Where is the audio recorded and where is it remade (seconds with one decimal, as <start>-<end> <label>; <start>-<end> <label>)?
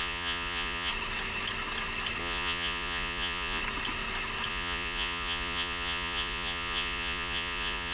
0.0-0.9 remade; 0.9-2.2 recorded; 2.2-3.6 remade; 3.6-4.5 recorded; 4.5-7.9 remade